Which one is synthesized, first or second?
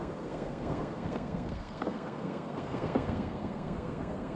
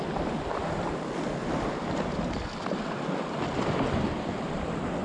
first